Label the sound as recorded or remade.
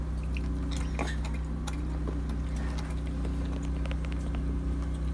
recorded